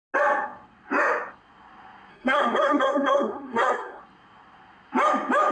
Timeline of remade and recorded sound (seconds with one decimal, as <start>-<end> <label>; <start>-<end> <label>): 0.0-2.1 recorded; 2.1-4.0 remade; 4.0-5.5 recorded